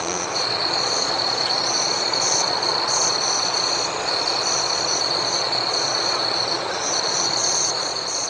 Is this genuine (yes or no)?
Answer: no